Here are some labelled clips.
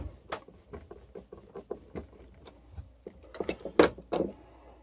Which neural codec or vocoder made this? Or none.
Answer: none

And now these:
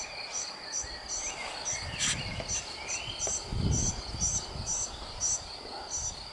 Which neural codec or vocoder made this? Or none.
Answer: none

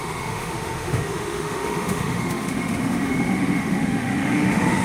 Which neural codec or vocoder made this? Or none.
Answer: autoencoder, DAC-VAE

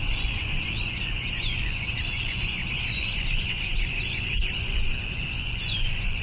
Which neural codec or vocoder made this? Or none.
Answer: vocoder, Vocos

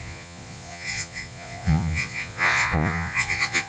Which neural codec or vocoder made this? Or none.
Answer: vocoder, Vocos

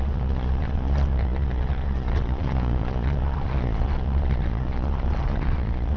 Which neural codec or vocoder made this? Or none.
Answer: vocoder, Vocos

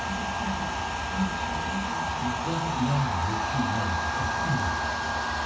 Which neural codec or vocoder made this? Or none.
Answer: none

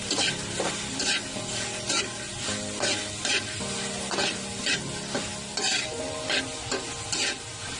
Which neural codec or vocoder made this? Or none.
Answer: none